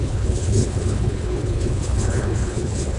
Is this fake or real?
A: fake